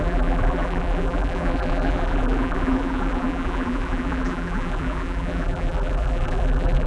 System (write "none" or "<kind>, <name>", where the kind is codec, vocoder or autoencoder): vocoder, BigVGAN v2